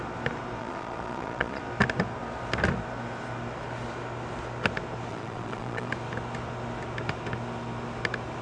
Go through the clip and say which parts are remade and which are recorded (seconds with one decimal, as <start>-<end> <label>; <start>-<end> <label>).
0.0-0.6 recorded; 0.6-1.6 remade; 1.6-5.1 recorded; 5.1-5.9 remade; 5.9-8.4 recorded